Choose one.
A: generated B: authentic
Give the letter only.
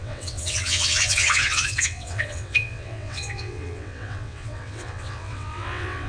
A